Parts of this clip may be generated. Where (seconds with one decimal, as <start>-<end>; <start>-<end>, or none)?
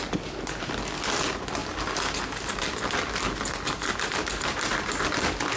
none